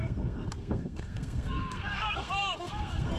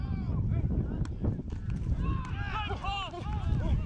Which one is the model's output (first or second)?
first